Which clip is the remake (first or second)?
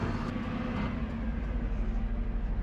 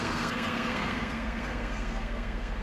second